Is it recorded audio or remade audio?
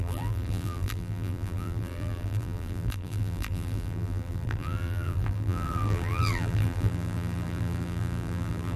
remade